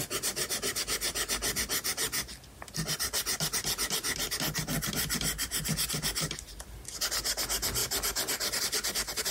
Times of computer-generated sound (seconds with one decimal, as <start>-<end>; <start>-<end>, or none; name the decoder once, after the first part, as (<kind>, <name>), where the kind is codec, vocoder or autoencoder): none